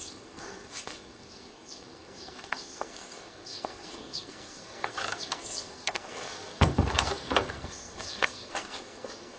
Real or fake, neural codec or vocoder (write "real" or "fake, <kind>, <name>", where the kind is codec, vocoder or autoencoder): fake, codec, SNAC